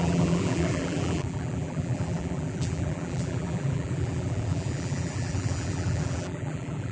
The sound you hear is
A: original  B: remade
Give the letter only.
B